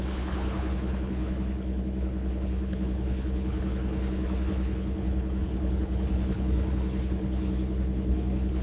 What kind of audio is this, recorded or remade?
remade